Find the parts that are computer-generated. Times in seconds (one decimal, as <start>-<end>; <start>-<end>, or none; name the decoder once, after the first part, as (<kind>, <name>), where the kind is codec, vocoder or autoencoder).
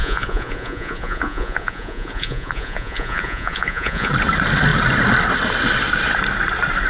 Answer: 0.0-4.1 (vocoder, Vocos)